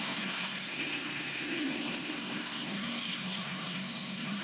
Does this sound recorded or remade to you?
remade